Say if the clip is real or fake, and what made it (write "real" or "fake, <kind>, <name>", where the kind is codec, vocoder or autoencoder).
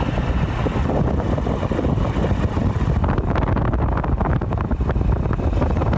real